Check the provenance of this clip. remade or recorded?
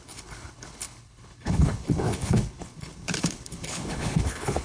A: remade